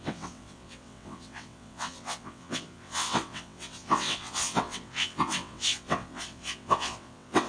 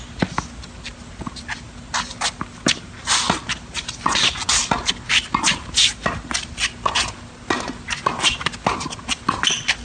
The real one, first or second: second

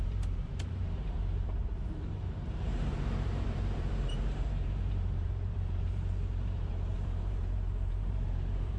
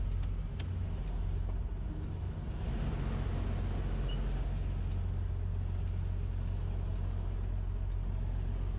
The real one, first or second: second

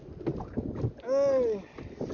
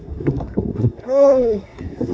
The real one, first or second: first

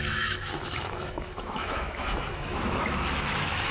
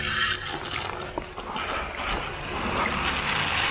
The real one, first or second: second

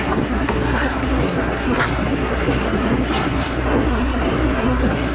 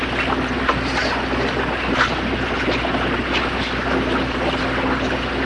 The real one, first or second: second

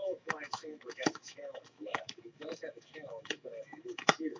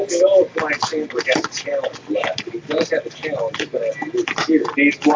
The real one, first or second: second